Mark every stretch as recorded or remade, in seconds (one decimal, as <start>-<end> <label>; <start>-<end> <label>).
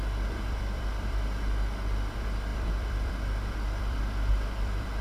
0.0-5.0 remade